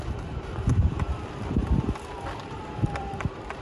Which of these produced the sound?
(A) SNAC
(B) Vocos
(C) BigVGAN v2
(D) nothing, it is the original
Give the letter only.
C